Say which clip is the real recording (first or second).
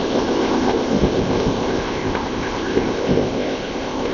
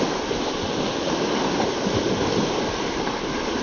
second